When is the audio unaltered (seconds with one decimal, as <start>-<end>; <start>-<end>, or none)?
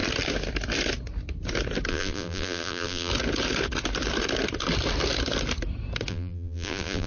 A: 0.0-1.9; 3.1-6.1